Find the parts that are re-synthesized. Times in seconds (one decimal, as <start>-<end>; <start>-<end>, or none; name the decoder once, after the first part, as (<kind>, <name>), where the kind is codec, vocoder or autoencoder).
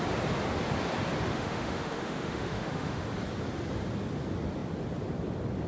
1.3-3.0 (autoencoder, DAC-VAE)